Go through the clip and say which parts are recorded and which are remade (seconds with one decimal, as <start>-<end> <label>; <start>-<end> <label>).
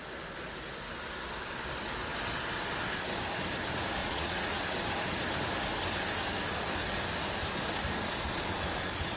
0.0-4.0 recorded; 4.0-4.6 remade; 4.6-9.2 recorded